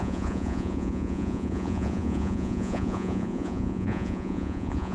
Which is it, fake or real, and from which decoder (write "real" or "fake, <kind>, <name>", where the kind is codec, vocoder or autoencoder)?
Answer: fake, vocoder, Vocos